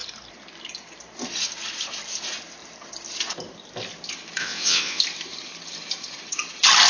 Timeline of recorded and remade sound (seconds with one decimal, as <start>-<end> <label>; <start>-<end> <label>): 0.0-4.4 recorded; 4.4-5.0 remade; 5.0-6.9 recorded